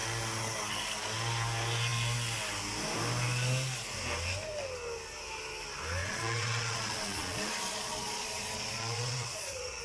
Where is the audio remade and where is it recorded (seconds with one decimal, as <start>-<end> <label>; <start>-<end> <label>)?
0.0-6.0 recorded; 6.0-9.8 remade

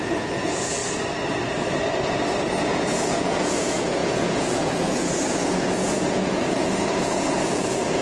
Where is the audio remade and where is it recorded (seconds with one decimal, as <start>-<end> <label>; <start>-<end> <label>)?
0.0-0.8 remade; 0.8-2.5 recorded; 2.5-8.0 remade